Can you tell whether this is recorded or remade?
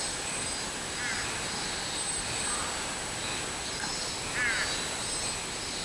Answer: recorded